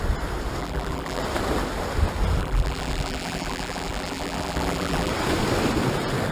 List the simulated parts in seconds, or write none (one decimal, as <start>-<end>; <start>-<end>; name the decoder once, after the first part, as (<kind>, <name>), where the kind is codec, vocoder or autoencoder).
0.6-1.2 (vocoder, BigVGAN v2); 2.4-5.1

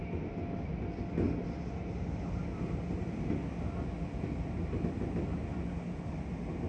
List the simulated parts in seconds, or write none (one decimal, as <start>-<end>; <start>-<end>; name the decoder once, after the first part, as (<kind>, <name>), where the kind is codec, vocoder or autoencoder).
none

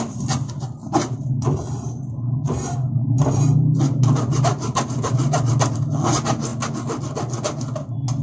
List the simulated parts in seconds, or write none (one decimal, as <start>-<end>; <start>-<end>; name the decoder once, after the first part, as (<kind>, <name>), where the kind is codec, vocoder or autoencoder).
0.8-5.5 (vocoder, BigVGAN v2)

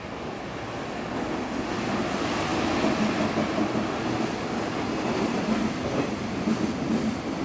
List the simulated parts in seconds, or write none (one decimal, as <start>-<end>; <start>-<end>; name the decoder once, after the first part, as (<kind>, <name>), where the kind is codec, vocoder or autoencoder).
none